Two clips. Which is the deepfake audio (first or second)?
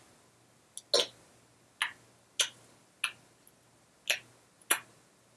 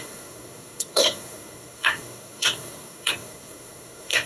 second